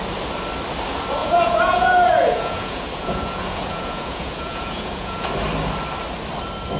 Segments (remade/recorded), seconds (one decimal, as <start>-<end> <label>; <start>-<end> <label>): 0.0-1.2 recorded; 1.2-5.3 remade; 5.3-6.8 recorded